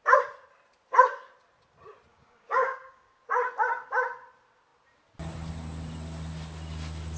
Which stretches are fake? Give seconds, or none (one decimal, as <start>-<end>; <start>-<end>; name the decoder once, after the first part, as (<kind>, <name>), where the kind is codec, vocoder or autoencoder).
2.1-3.2 (codec, DAC)